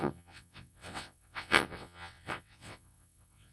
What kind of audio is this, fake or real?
fake